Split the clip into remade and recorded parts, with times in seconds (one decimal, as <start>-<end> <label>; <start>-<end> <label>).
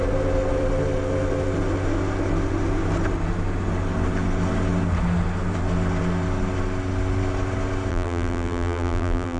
0.0-7.9 recorded; 7.9-9.4 remade